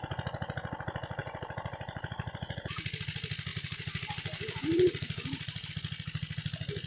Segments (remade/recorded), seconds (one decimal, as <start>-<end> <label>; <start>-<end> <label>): 0.0-1.2 recorded; 1.2-3.0 remade; 3.0-3.5 recorded; 3.5-5.7 remade; 5.7-6.9 recorded